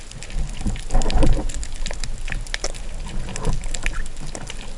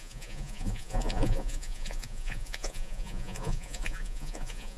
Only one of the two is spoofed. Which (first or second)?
second